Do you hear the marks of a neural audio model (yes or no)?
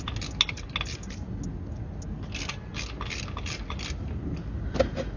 no